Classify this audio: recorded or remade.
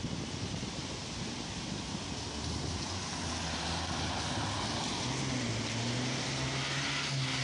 recorded